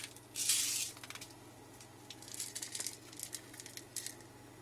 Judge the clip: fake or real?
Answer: real